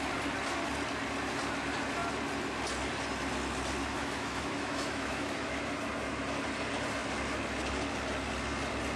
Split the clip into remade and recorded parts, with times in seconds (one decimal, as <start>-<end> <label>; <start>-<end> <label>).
0.0-3.8 recorded; 3.8-5.6 remade; 5.6-9.0 recorded